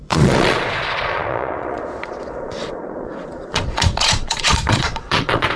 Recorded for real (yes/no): no